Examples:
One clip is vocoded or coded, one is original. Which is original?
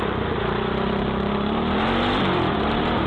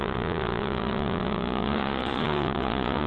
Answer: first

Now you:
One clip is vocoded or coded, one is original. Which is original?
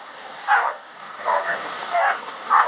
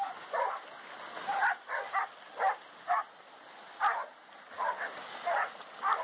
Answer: second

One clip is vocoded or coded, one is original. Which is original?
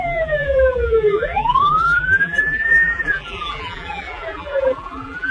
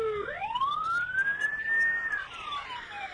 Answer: second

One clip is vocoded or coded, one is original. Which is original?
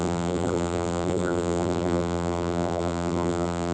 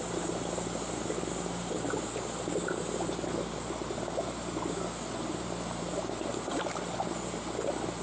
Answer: second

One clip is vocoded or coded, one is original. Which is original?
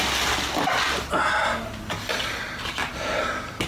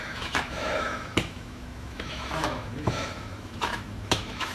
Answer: first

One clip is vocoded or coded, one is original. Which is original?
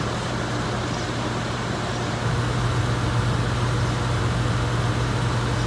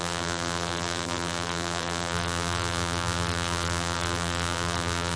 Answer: first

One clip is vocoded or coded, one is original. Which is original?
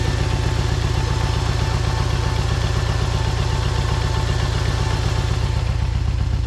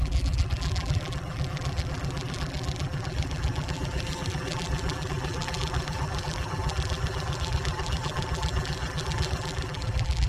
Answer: first